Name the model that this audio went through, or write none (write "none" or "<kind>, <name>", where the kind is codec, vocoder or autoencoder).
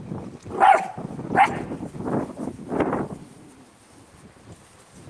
none